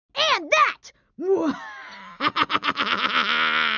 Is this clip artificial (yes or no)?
no